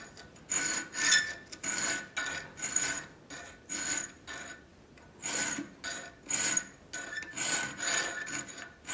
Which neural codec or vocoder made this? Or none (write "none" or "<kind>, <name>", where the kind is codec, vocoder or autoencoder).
none